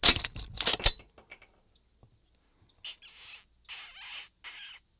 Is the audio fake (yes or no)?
no